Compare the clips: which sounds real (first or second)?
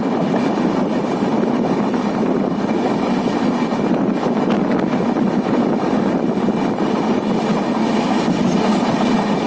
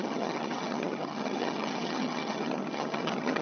first